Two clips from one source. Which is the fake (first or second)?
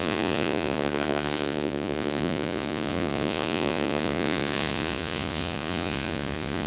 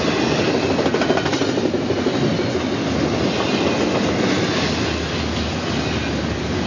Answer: first